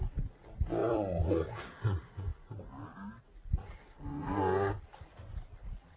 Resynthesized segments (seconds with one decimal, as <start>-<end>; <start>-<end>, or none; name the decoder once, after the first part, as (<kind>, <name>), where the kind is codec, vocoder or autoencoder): 0.8-1.5 (vocoder, BigVGAN v2)